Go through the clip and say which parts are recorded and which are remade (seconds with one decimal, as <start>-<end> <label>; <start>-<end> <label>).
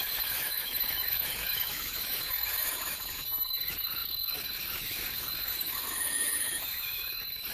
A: 0.0-7.5 remade